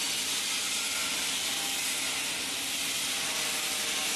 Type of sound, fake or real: real